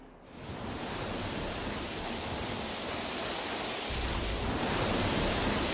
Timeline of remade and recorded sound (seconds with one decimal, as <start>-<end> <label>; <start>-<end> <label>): 0.0-5.7 recorded